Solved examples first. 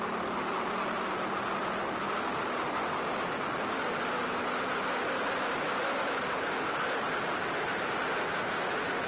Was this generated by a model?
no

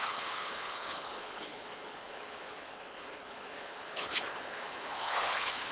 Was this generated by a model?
yes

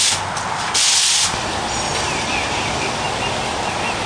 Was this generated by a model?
no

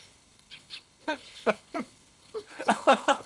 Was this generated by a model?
yes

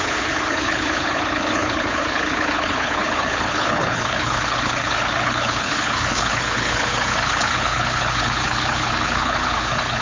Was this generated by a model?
yes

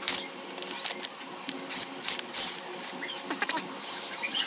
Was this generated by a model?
no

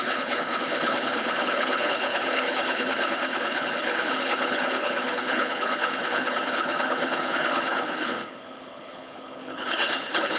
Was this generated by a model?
yes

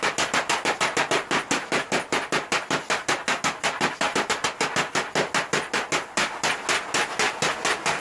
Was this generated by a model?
no